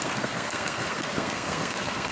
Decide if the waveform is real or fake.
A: fake